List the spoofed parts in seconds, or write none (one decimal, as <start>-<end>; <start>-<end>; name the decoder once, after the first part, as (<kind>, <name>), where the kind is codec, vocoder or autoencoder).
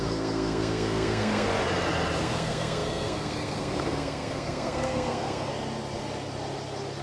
0.0-1.5 (codec, SNAC); 2.2-5.5